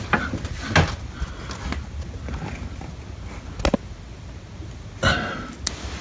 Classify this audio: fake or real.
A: real